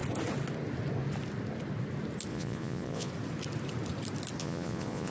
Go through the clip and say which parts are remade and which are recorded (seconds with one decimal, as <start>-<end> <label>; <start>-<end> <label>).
0.0-2.3 recorded; 2.3-3.1 remade; 3.1-4.4 recorded; 4.4-5.1 remade